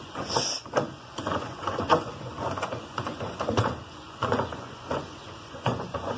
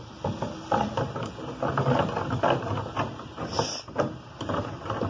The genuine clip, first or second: second